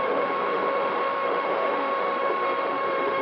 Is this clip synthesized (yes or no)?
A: yes